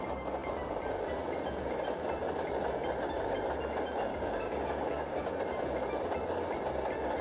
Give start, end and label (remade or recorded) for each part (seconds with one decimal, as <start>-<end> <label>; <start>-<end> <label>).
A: 0.0-4.1 recorded; 4.1-5.4 remade; 5.4-7.2 recorded